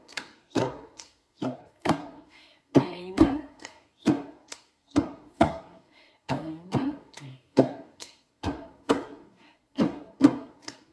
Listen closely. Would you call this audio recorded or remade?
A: remade